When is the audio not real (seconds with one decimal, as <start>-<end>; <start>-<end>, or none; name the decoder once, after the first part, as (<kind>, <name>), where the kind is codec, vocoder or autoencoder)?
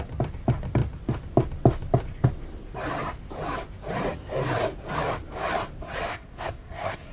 6.1-7.1 (codec, SNAC)